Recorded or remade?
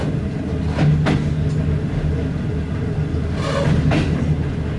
recorded